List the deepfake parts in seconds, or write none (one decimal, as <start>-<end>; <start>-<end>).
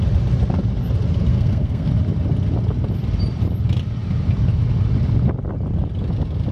1.3-1.9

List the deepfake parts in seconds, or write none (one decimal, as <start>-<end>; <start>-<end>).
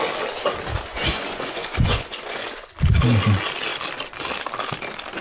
0.9-2.7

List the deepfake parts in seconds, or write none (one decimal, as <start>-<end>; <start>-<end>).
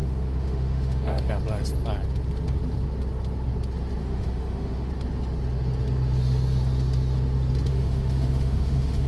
0.0-1.3; 4.0-4.9; 7.7-9.1